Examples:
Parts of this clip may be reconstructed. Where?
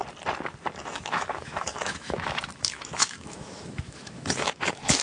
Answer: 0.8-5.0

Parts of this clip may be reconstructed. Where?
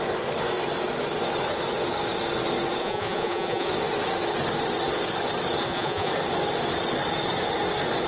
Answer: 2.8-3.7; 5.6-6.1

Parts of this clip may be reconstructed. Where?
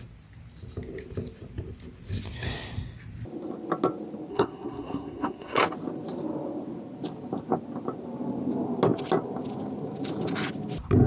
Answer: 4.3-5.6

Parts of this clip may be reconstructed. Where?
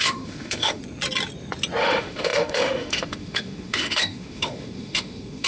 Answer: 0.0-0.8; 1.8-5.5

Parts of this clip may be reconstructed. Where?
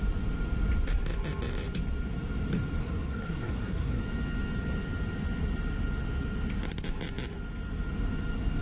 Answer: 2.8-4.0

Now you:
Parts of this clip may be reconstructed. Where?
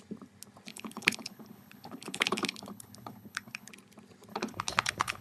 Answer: 0.7-3.7; 4.3-5.2